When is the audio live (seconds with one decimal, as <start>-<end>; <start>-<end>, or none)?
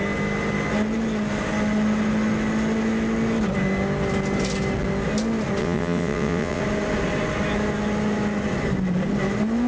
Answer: 0.0-5.6; 6.6-9.7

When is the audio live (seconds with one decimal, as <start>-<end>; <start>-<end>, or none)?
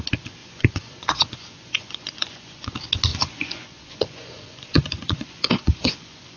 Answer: 0.0-0.4; 2.7-3.1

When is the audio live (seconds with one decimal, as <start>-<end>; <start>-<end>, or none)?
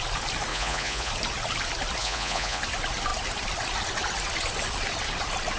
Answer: 0.0-0.5; 1.1-2.0; 2.6-5.6